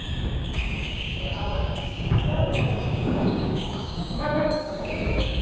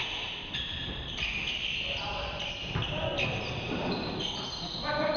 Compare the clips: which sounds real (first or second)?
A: second